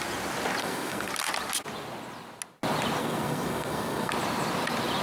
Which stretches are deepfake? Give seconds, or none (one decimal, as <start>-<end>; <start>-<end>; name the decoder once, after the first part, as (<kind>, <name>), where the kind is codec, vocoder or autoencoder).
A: 0.6-1.1 (codec, SNAC); 3.0-4.1